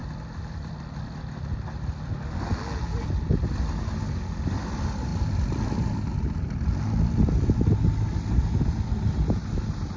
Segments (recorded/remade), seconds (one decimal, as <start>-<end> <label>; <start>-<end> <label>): 0.0-10.0 recorded